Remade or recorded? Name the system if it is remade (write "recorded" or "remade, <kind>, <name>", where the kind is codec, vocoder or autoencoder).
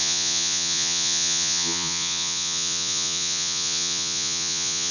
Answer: remade, vocoder, Vocos